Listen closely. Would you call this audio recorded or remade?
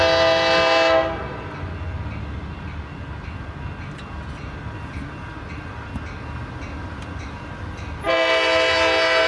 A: recorded